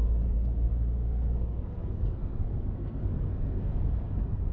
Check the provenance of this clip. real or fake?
fake